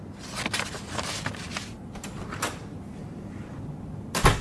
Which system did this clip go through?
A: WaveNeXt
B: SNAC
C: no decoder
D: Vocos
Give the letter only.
C